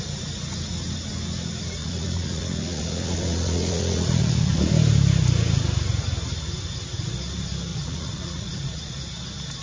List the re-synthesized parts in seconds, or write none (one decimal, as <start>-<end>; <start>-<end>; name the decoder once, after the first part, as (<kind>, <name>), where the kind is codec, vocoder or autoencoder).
1.8-4.6 (vocoder, Vocos); 7.7-8.9